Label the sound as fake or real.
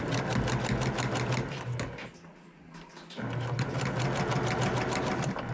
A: real